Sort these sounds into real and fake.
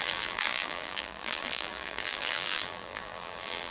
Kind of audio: fake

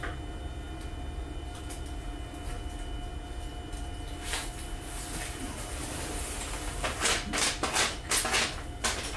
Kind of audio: real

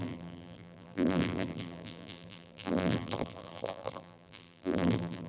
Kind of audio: fake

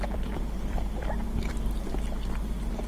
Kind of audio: fake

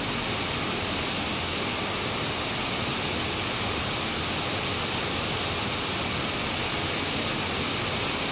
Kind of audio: real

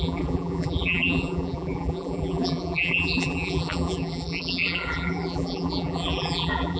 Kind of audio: fake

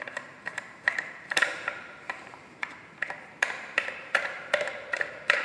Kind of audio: fake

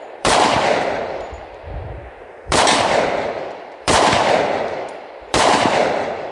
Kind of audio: fake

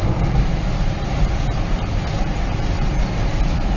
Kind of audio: fake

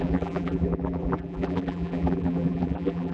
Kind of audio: fake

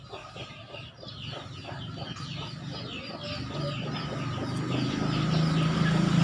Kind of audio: real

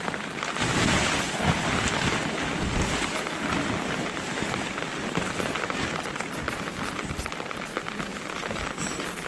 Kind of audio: real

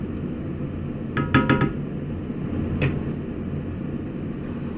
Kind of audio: real